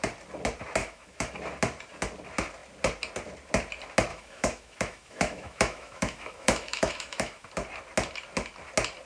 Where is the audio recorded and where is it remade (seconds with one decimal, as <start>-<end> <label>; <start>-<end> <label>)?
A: 0.0-0.8 recorded; 0.8-1.3 remade; 1.3-4.1 recorded; 4.1-7.5 remade; 7.5-9.1 recorded